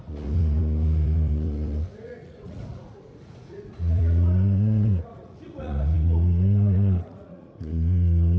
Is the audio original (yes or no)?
no